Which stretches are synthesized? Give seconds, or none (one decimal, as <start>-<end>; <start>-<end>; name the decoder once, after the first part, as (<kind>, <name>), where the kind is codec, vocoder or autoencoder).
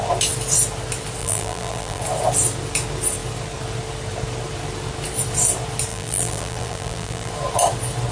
1.2-2.0 (vocoder, BigVGAN v2); 5.9-7.3